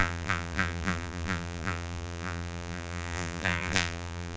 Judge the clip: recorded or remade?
remade